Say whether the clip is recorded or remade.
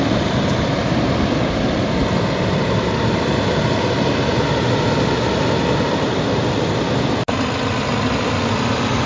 recorded